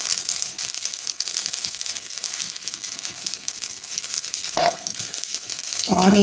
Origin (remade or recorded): remade